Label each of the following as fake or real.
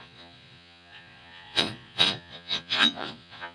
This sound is fake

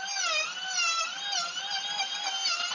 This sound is real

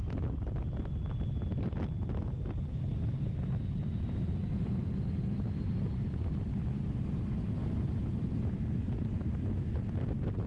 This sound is real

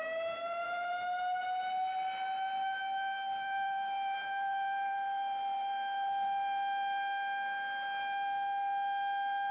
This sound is real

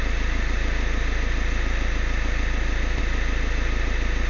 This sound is real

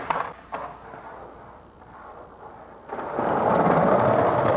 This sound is real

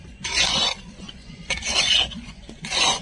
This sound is fake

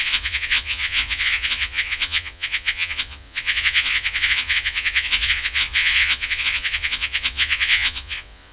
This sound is fake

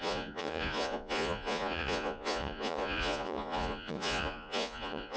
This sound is fake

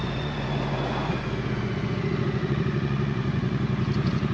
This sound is fake